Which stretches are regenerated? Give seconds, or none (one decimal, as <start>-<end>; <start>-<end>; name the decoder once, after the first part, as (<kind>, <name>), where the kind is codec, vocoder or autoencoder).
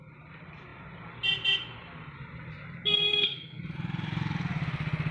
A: 2.9-3.6 (codec, SNAC)